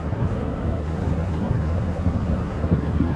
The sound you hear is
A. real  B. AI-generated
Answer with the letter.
B